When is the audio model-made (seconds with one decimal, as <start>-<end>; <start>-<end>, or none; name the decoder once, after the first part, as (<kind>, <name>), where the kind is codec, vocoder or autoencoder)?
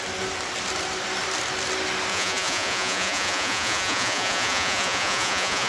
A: 2.1-5.7 (vocoder, Vocos)